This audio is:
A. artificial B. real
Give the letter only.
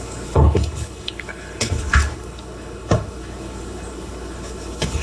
A